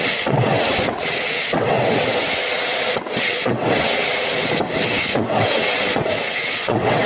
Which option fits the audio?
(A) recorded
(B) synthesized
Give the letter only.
B